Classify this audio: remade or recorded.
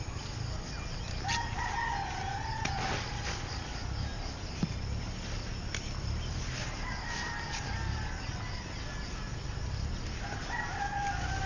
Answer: recorded